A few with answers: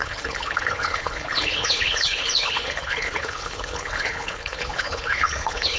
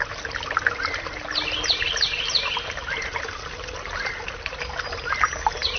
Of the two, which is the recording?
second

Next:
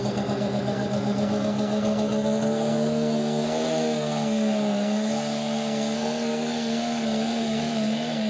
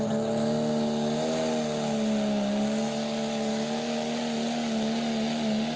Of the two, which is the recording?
second